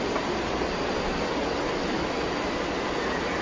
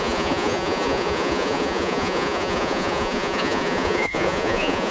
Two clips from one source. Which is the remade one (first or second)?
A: second